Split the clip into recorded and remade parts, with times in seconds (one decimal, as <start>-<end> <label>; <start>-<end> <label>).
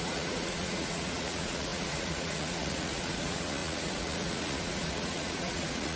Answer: 0.0-6.0 remade